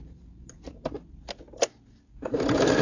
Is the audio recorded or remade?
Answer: recorded